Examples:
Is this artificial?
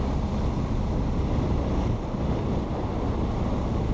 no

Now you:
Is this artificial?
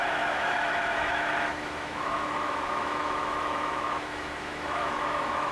yes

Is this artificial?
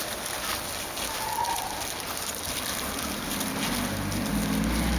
no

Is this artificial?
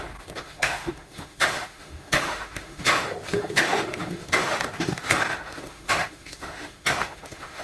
yes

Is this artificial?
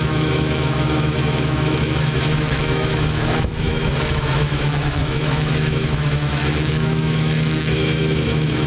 yes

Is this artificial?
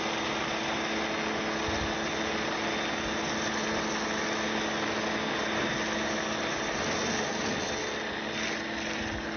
no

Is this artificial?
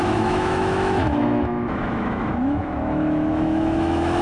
yes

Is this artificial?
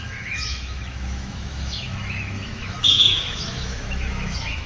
yes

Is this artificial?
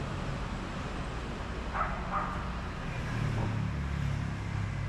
no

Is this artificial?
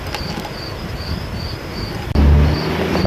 no